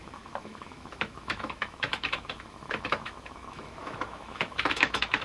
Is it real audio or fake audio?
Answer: fake